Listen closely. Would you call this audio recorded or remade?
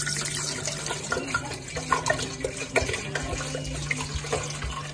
recorded